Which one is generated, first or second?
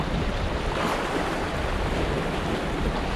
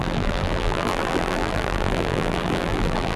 second